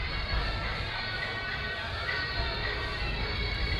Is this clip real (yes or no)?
yes